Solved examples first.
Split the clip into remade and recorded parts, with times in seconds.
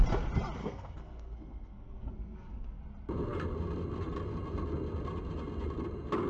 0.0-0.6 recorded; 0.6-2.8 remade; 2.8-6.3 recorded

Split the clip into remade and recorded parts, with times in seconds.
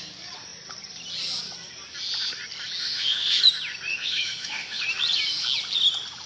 0.0-2.8 recorded; 2.8-3.4 remade; 3.4-3.9 recorded; 3.9-4.8 remade; 4.8-6.3 recorded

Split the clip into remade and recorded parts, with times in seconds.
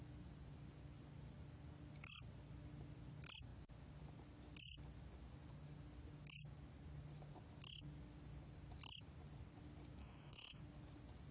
0.0-10.0 recorded; 10.0-10.6 remade; 10.6-11.3 recorded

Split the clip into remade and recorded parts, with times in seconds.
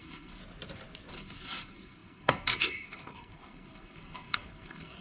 0.0-0.4 remade; 0.4-1.1 recorded; 1.1-5.0 remade